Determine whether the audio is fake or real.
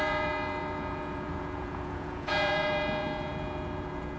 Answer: fake